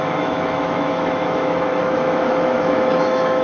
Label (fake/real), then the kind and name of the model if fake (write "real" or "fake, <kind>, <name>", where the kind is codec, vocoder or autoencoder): fake, autoencoder, DAC-VAE